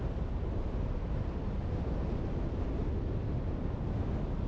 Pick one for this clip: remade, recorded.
recorded